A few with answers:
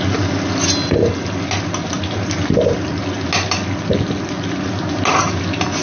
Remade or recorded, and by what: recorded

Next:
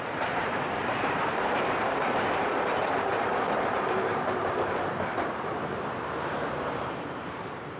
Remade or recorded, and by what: remade, vocoder, BigVGAN v2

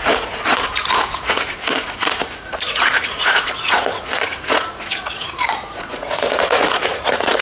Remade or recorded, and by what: remade, vocoder, Vocos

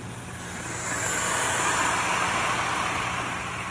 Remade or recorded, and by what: recorded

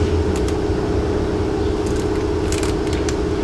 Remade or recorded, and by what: recorded